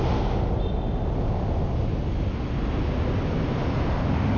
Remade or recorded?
recorded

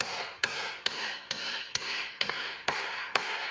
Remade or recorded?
remade